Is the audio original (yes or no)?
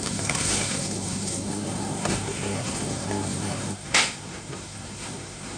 no